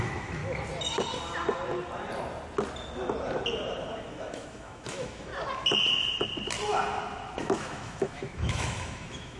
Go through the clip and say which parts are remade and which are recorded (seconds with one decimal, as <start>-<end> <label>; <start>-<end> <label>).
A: 0.0-0.4 remade; 0.4-4.0 recorded; 4.0-5.3 remade; 5.3-7.4 recorded; 7.4-9.4 remade

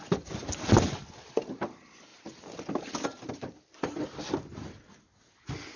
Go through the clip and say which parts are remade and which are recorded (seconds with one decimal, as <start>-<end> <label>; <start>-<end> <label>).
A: 0.0-5.8 recorded